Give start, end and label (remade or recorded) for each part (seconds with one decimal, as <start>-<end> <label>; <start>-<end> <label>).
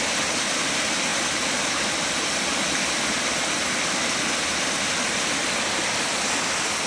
0.0-6.9 recorded